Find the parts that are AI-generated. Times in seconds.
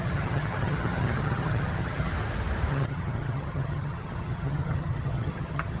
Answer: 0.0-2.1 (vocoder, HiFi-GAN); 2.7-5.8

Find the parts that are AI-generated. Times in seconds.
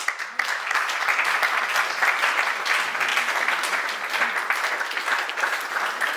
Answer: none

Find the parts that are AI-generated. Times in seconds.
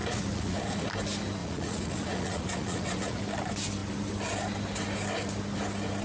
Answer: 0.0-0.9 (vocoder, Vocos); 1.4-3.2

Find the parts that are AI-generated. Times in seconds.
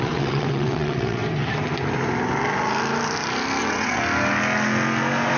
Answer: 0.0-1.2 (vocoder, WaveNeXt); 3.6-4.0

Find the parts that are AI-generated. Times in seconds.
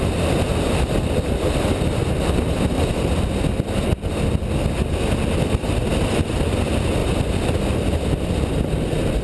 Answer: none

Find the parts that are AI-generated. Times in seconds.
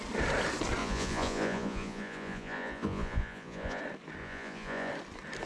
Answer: 0.8-3.8 (vocoder, Vocos); 4.2-4.9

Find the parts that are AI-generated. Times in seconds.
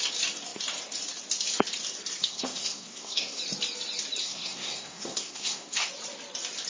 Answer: 2.2-3.4 (codec, SNAC); 4.2-5.9